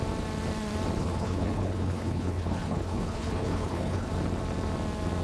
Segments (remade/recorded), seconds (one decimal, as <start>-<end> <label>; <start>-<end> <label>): 0.0-1.0 recorded; 1.0-4.1 remade; 4.1-5.2 recorded